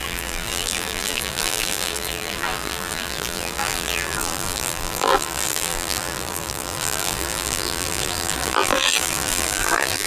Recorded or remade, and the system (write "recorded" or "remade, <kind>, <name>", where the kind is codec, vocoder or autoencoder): remade, vocoder, BigVGAN v2